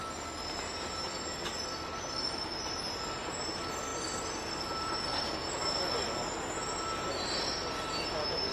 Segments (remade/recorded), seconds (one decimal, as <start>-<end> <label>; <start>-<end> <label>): 0.0-8.5 recorded